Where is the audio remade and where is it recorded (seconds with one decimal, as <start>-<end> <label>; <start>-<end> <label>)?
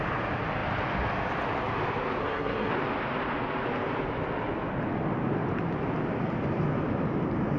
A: 0.0-2.2 recorded; 2.2-2.7 remade; 2.7-7.6 recorded